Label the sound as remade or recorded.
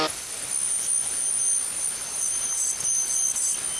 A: recorded